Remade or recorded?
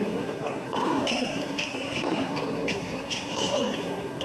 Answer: remade